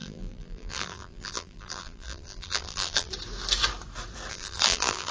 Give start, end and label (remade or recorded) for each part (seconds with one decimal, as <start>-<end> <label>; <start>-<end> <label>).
0.0-3.1 remade; 3.1-4.3 recorded; 4.3-5.1 remade